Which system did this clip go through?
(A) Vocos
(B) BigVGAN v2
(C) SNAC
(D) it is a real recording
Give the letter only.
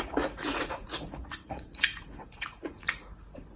A